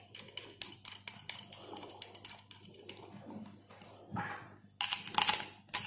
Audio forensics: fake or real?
real